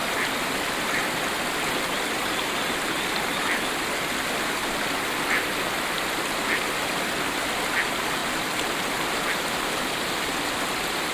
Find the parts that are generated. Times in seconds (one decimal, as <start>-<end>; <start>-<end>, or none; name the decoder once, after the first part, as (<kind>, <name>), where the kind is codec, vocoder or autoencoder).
none